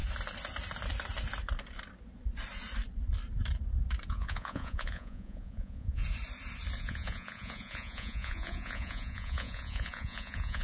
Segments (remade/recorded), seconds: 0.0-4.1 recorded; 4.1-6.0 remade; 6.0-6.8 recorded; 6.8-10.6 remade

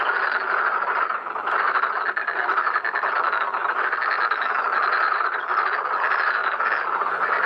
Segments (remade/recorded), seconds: 0.0-7.5 recorded

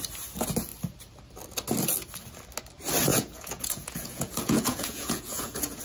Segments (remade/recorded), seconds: 0.0-3.1 recorded; 3.1-5.8 remade

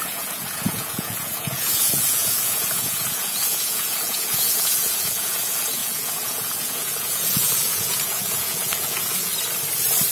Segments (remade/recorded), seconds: 0.0-9.3 remade; 9.3-10.1 recorded

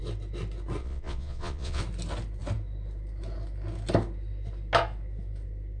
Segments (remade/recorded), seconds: 0.0-0.8 recorded; 0.8-1.8 remade; 1.8-5.8 recorded

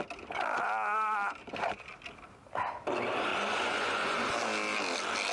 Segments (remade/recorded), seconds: 0.0-3.3 recorded; 3.3-4.3 remade; 4.3-5.3 recorded

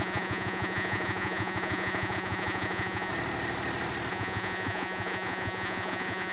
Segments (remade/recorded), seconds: 0.0-3.1 remade; 3.1-4.1 recorded; 4.1-6.3 remade

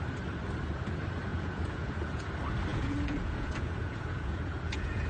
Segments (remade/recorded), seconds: 0.0-1.3 recorded; 1.3-2.3 remade; 2.3-2.7 recorded; 2.7-5.1 remade